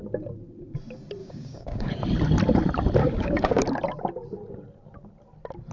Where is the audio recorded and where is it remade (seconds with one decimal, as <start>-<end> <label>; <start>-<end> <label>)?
0.0-1.2 recorded; 1.2-1.9 remade; 1.9-3.0 recorded; 3.0-3.6 remade; 3.6-5.7 recorded